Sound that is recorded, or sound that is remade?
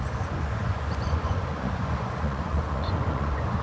remade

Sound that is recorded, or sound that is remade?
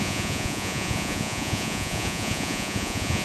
remade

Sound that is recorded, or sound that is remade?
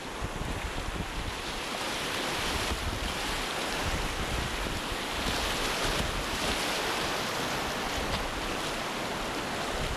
recorded